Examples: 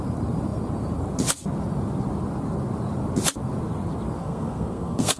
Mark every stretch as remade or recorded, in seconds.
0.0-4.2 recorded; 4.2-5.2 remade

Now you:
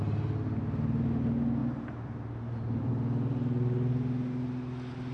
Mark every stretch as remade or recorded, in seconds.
0.0-1.6 recorded; 1.6-2.9 remade; 2.9-5.1 recorded

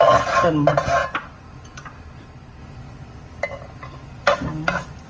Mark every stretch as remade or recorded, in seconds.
0.0-1.0 recorded; 1.0-2.6 remade; 2.6-5.1 recorded

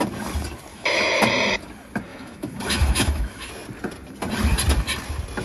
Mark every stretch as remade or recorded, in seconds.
0.0-0.7 recorded; 0.7-1.2 remade; 1.2-2.1 recorded; 2.1-3.5 remade; 3.5-5.4 recorded

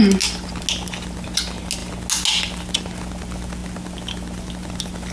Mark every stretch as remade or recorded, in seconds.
0.0-5.1 recorded